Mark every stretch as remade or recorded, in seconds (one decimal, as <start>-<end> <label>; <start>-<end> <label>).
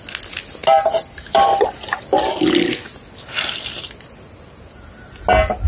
0.0-5.7 recorded